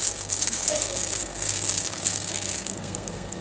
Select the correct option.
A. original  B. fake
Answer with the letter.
B